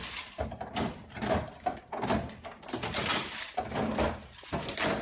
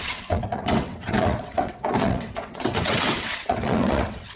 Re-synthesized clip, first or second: second